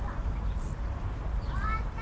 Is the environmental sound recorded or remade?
recorded